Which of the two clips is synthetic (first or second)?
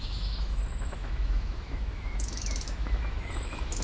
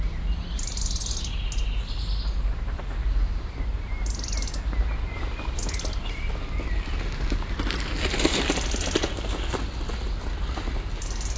first